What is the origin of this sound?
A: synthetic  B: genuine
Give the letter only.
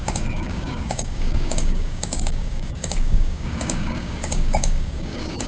A